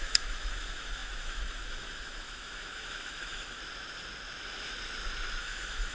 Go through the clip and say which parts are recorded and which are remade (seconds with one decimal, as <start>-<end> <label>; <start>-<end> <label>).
0.0-3.6 remade; 3.6-5.4 recorded; 5.4-5.9 remade